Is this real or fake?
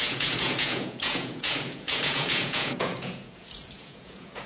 fake